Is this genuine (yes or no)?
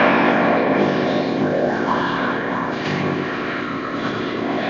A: no